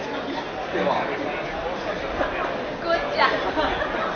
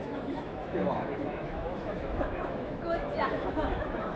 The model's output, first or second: second